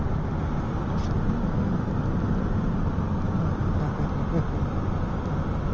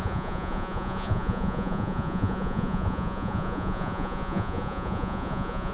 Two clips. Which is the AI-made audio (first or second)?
second